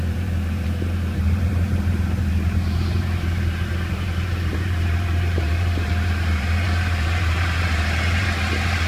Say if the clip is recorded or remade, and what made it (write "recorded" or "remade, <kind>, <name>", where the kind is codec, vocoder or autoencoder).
remade, vocoder, BigVGAN v2